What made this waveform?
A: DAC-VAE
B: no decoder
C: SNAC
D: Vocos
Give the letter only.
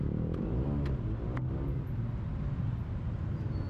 B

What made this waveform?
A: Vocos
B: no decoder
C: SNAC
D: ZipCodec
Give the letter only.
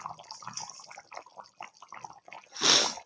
B